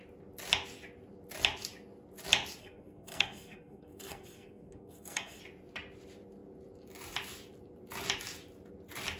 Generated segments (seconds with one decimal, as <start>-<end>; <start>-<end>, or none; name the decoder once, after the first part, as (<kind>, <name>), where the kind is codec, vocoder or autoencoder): 2.6-5.4 (codec, SNAC)